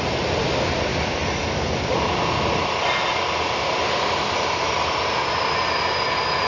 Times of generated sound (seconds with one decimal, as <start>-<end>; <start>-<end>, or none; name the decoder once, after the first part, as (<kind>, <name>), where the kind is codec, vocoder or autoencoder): none